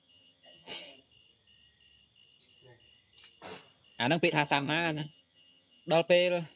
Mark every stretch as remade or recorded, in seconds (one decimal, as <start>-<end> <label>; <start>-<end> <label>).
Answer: 0.0-0.9 remade; 0.9-4.3 recorded; 4.3-5.8 remade; 5.8-6.6 recorded